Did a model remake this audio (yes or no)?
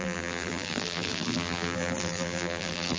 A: yes